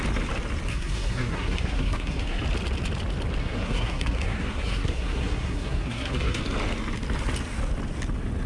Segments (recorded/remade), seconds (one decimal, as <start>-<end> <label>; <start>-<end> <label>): 0.0-0.7 recorded; 0.7-2.4 remade; 2.4-3.4 recorded; 3.4-6.4 remade; 6.4-8.5 recorded